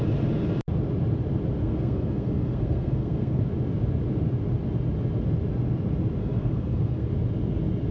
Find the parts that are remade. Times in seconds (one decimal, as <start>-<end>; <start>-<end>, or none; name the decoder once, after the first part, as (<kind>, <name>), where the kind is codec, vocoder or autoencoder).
1.6-3.4 (codec, SNAC); 6.2-7.1